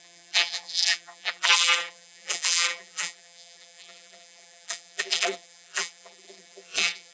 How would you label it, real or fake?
fake